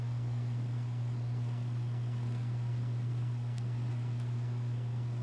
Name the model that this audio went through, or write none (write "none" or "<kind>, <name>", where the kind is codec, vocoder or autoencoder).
codec, SNAC